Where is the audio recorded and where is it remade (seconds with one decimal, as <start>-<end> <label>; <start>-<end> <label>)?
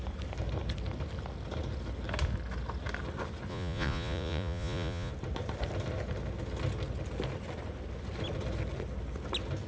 0.0-3.5 recorded; 3.5-5.1 remade; 5.1-9.7 recorded